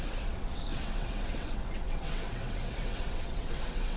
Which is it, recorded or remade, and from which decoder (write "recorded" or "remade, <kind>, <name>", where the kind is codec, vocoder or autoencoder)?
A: remade, vocoder, WaveNeXt